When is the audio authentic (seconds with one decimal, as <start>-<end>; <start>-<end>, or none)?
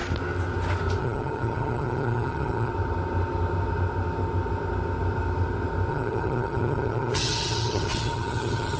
0.0-1.0; 2.7-5.9